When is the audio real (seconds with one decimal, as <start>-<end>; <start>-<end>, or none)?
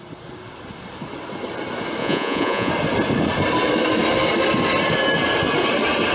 0.0-2.0; 2.7-6.1